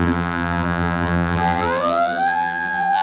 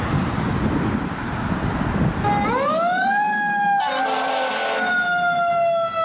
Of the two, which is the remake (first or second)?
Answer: first